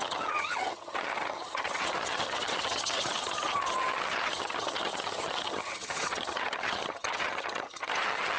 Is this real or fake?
fake